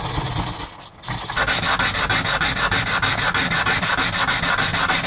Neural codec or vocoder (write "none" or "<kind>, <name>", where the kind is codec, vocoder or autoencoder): none